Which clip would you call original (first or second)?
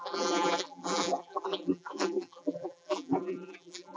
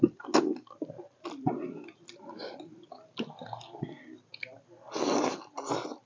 second